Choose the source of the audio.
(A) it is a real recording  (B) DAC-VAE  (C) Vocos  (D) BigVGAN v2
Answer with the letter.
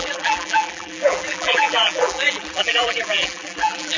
D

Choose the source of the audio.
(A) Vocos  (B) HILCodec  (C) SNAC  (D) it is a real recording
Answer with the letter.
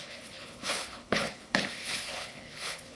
B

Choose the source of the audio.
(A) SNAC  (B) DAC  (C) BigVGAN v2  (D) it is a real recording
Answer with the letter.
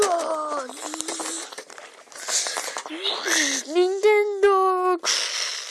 D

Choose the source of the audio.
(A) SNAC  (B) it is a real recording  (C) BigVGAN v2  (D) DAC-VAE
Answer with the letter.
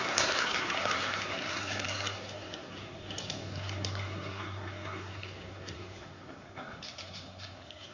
A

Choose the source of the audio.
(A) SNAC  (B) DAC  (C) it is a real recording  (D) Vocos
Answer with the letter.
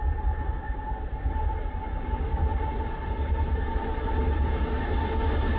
C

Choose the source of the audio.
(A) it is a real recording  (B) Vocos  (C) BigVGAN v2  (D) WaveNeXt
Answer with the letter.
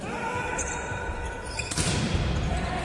A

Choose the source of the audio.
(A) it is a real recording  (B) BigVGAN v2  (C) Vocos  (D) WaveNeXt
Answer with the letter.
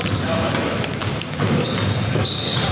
A